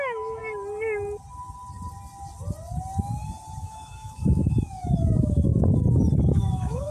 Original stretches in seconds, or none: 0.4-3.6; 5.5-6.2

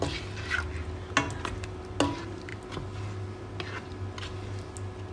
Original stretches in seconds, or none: 0.0-5.1

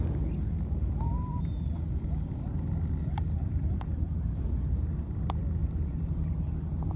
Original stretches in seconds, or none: 0.0-0.8; 2.3-3.0; 4.1-5.6; 6.5-7.0

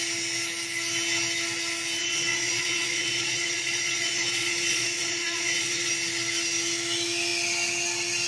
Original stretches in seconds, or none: 0.0-2.0; 5.9-8.3